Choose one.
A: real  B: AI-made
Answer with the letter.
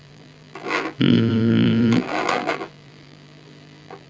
B